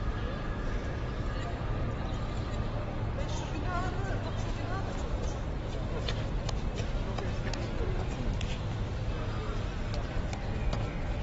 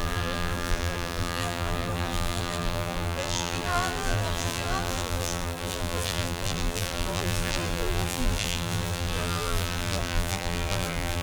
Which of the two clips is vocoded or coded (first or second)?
second